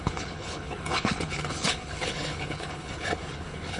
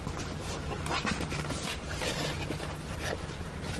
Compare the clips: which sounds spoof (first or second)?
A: first